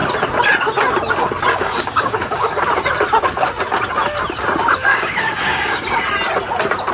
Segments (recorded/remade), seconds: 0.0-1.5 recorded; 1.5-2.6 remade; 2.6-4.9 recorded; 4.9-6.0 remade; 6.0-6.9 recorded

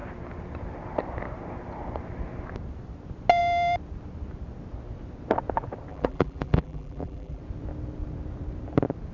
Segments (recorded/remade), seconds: 0.0-5.9 recorded; 5.9-7.4 remade; 7.4-9.1 recorded

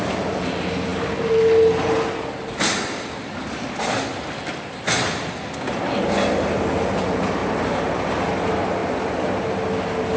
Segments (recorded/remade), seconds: 0.0-10.2 recorded

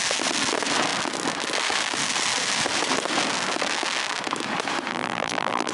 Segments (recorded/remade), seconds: 0.0-4.9 recorded; 4.9-5.7 remade

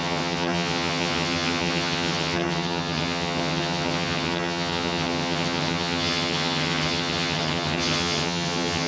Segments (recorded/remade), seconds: 0.0-8.9 remade